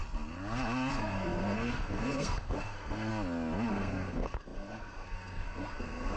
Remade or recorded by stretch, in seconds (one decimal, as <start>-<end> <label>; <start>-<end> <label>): 0.0-0.9 recorded; 0.9-3.1 remade; 3.1-3.7 recorded; 3.7-6.2 remade